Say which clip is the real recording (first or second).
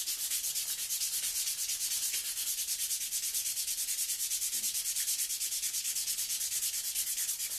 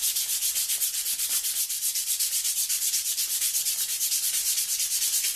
first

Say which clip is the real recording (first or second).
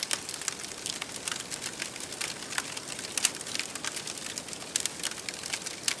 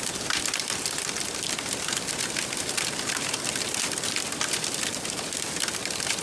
first